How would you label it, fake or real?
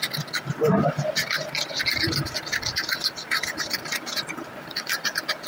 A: real